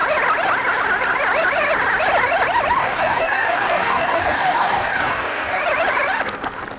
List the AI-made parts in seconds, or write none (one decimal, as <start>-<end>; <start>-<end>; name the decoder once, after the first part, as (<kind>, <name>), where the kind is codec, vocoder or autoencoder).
2.8-5.6 (codec, DAC)